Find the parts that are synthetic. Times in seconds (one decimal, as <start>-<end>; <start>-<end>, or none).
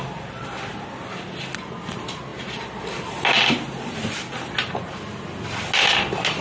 none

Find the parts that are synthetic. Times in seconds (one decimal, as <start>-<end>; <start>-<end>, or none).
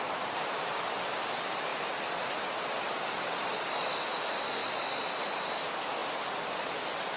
none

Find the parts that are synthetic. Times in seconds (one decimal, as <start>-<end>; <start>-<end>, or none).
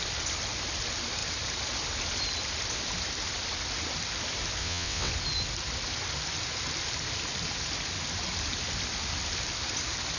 4.6-5.1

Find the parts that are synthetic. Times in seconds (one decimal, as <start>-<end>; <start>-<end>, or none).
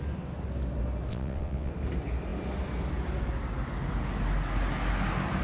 1.1-1.7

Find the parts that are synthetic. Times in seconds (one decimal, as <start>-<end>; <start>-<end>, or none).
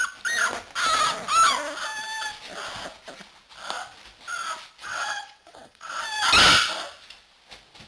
4.8-6.0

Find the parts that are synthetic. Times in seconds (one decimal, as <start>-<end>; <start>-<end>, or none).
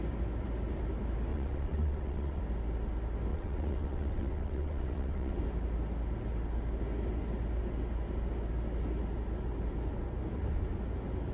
1.3-2.4; 3.3-5.4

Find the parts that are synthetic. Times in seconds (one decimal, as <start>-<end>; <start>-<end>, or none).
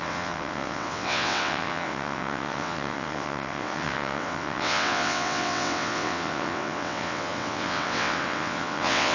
0.0-9.1